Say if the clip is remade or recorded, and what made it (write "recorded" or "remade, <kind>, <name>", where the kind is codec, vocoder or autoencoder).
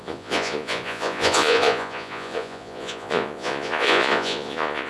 remade, vocoder, Vocos